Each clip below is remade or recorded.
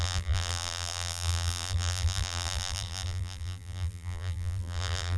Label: remade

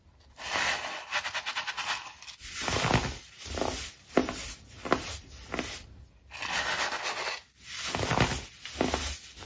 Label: recorded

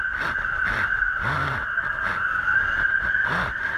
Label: recorded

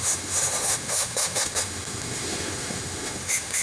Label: remade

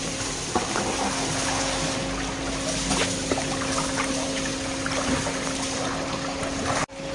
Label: recorded